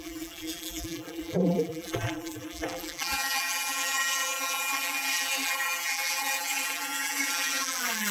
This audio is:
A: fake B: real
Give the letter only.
A